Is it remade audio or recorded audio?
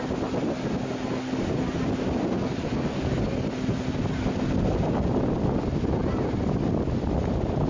recorded